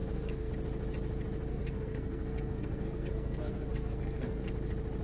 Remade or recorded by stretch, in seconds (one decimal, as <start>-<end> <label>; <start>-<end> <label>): 0.0-0.5 remade; 0.5-1.5 recorded; 1.5-4.5 remade; 4.5-5.0 recorded